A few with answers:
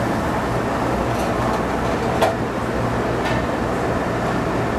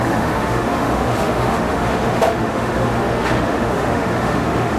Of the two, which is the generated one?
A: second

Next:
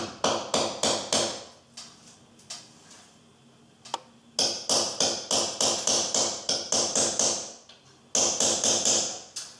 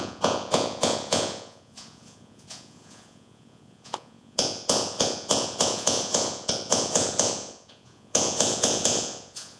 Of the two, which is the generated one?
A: second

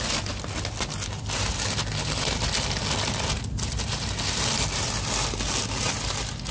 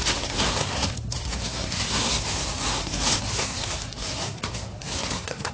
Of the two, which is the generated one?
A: second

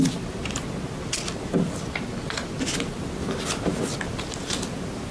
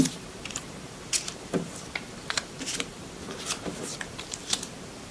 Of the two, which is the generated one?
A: second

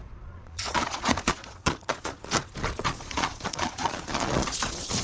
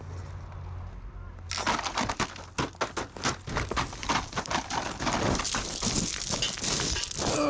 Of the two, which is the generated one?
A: first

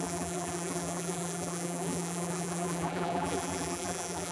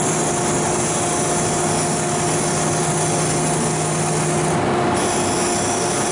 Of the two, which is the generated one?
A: first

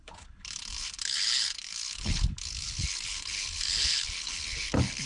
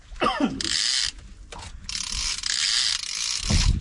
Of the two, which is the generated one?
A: first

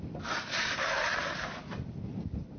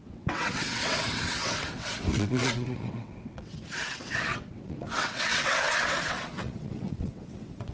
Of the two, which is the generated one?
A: second